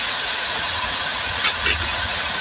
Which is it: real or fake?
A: fake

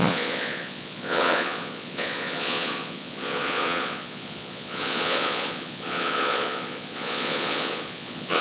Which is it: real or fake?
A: fake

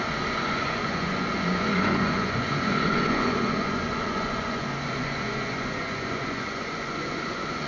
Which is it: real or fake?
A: fake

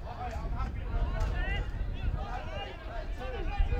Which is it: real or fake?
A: real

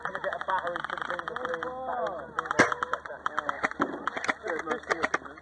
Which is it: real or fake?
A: real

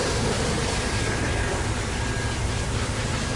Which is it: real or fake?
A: real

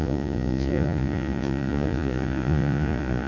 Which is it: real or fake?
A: fake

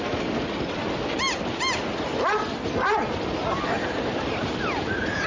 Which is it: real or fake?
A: real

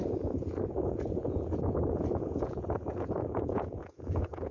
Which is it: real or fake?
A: fake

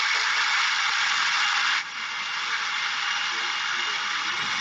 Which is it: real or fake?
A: real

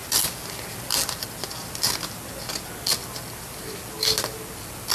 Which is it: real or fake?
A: real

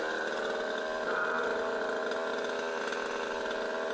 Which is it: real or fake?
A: real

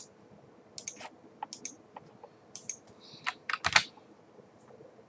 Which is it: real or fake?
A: real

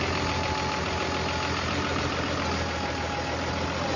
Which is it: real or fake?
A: real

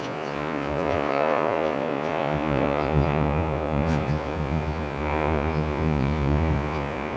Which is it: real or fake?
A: fake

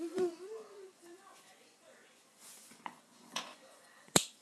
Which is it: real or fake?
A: fake